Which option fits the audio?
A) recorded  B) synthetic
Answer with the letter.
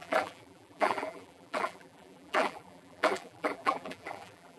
B